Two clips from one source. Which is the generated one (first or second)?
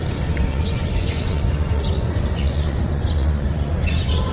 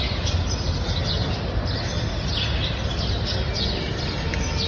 first